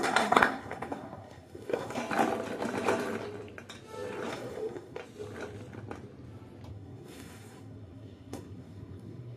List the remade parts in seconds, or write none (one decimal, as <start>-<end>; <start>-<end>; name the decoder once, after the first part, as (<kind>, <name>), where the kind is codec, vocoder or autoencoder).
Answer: 0.0-2.0 (codec, SNAC); 4.3-5.0; 6.7-9.4